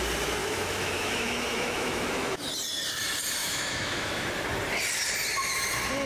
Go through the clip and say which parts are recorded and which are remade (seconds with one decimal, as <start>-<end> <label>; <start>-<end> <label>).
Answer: 0.0-0.4 recorded; 0.4-2.4 remade; 2.4-3.4 recorded; 3.4-4.3 remade; 4.3-6.1 recorded